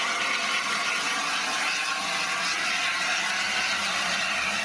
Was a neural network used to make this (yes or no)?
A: no